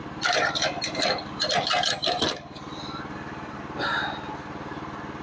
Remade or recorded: recorded